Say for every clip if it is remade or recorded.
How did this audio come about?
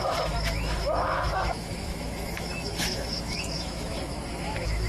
remade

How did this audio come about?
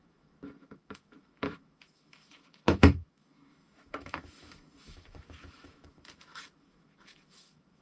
remade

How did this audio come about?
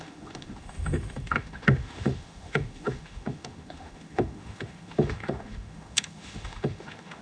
remade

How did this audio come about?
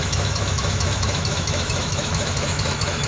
remade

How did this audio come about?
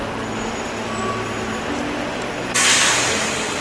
recorded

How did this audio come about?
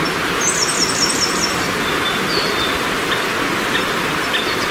recorded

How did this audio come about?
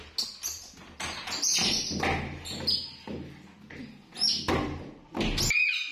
recorded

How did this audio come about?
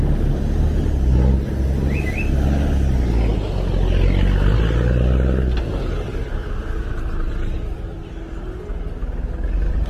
recorded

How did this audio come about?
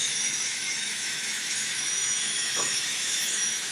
remade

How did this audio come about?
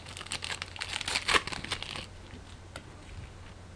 recorded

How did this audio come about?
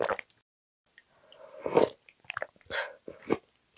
recorded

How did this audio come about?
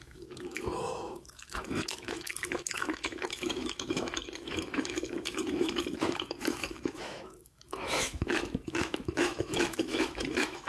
remade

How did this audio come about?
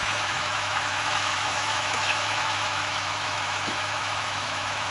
remade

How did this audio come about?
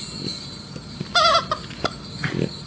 recorded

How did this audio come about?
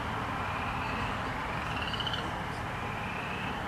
recorded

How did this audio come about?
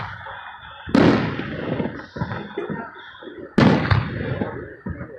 recorded